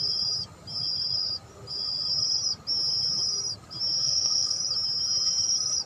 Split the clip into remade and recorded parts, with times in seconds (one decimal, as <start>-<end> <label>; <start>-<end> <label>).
0.0-4.0 recorded; 4.0-4.6 remade; 4.6-5.9 recorded